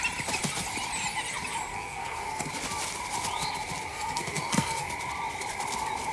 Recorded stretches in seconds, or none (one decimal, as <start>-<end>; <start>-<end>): 0.0-1.7; 2.5-3.9; 4.9-6.1

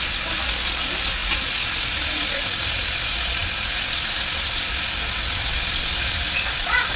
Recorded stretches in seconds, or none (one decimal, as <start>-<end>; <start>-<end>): 0.0-7.0

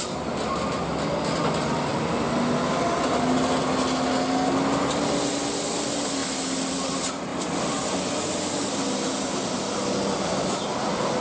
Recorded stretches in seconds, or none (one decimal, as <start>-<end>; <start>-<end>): 0.0-7.3; 8.0-11.2